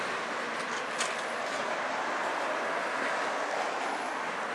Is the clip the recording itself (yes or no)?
yes